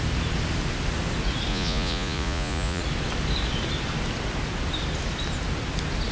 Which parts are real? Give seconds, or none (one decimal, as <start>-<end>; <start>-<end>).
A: 0.0-1.5; 2.8-6.1